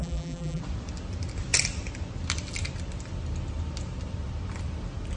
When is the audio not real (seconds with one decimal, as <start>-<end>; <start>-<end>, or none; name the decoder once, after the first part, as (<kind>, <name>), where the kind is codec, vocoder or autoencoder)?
0.0-0.6 (vocoder, BigVGAN v2)